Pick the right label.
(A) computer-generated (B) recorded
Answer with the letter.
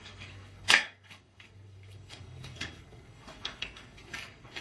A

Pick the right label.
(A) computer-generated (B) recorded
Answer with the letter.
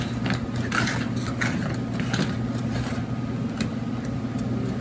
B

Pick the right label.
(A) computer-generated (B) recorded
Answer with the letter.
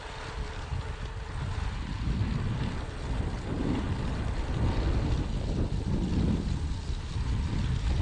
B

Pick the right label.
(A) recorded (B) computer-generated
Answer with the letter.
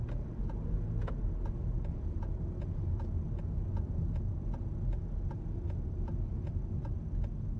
A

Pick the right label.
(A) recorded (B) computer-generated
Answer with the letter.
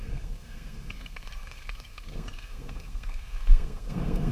B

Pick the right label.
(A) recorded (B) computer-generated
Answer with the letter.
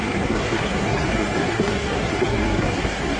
B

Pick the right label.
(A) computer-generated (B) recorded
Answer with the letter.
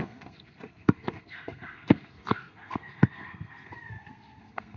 A